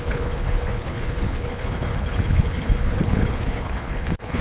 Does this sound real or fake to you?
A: fake